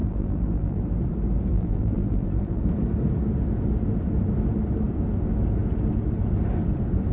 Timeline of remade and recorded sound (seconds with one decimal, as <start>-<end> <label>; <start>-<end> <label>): 0.0-0.8 remade; 0.8-1.5 recorded; 1.5-2.6 remade; 2.6-7.1 recorded